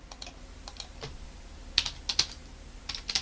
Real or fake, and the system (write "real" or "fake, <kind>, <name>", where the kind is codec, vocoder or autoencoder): real